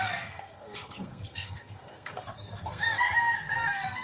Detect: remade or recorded remade